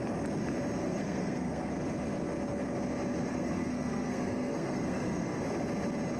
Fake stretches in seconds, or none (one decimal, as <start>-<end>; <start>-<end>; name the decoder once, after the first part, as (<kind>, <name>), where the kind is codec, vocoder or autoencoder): 0.8-1.7 (codec, SNAC); 3.3-5.4